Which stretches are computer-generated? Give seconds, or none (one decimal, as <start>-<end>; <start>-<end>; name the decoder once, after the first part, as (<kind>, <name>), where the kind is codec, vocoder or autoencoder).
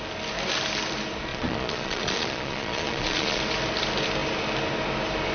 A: 1.3-3.4 (vocoder, Vocos)